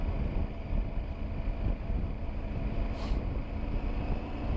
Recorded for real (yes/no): yes